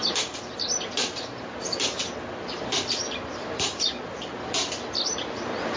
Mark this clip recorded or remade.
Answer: recorded